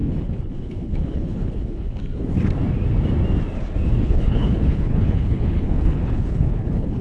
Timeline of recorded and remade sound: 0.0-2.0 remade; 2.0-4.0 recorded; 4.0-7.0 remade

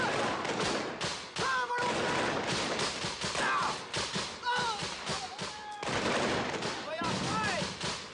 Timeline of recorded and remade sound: 0.0-8.1 recorded

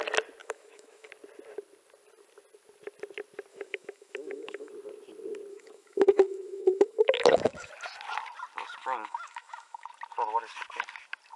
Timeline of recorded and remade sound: 0.0-0.4 recorded; 0.4-1.1 remade; 1.1-3.5 recorded; 3.5-4.7 remade; 4.7-5.5 recorded; 5.5-7.7 remade; 7.7-8.8 recorded; 8.8-9.9 remade; 9.9-11.4 recorded

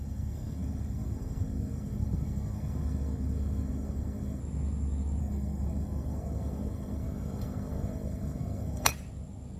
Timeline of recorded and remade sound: 0.0-4.4 remade; 4.4-5.2 recorded; 5.2-8.9 remade; 8.9-9.6 recorded

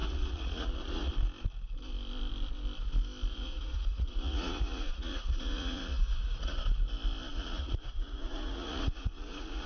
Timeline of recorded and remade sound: 0.0-1.1 remade; 1.1-3.3 recorded; 3.3-6.6 remade; 6.6-7.3 recorded; 7.3-9.7 remade

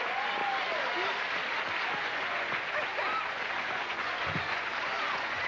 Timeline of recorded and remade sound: 0.0-0.4 remade; 0.4-1.9 recorded; 1.9-5.5 remade

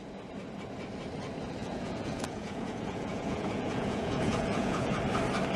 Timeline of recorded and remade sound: 0.0-1.6 recorded; 1.6-5.0 remade; 5.0-5.6 recorded

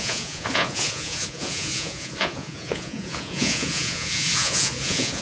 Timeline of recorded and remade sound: 0.0-5.2 remade